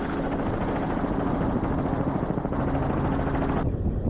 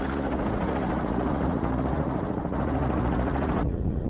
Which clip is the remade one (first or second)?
second